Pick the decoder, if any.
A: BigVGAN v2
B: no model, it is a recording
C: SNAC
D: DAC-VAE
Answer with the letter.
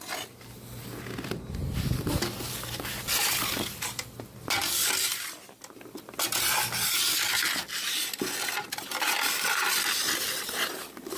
B